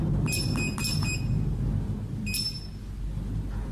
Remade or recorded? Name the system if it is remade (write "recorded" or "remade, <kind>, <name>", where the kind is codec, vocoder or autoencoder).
recorded